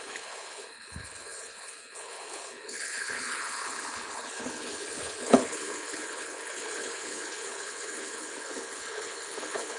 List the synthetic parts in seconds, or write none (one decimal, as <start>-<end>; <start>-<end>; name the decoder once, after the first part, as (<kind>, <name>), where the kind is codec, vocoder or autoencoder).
0.0-9.8 (codec, HILCodec)